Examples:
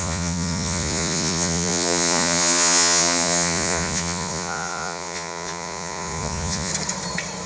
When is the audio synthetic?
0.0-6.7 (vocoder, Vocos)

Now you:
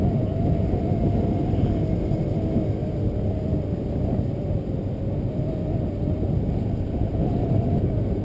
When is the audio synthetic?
none

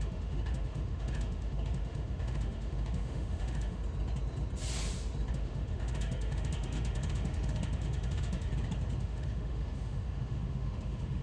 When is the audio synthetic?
0.0-3.8 (autoencoder, DAC-VAE); 5.3-8.5; 9.0-11.2

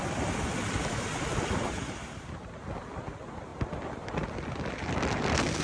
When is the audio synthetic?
none

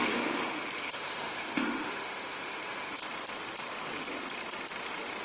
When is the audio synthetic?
0.0-3.0 (autoencoder, DAC-VAE)

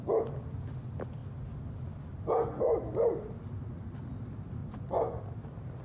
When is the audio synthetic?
4.6-5.2 (vocoder, Vocos)

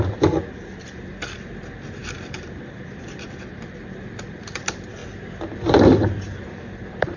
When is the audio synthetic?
0.0-5.0 (vocoder, BigVGAN v2); 6.1-7.2